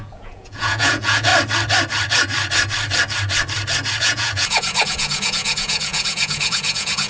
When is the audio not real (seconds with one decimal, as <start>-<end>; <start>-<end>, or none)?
0.0-1.3; 4.0-7.1